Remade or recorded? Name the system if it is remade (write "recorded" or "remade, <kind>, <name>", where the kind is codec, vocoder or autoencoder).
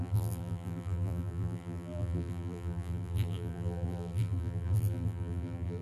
remade, vocoder, BigVGAN v2